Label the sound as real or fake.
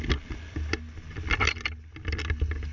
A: real